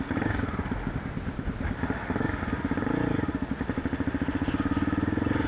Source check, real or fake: real